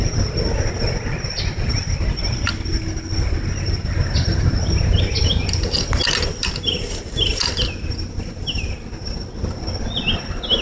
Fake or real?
real